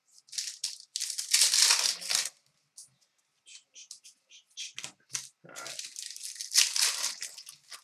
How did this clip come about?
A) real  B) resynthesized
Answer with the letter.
A